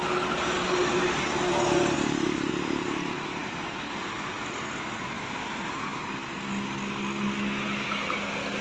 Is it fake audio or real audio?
real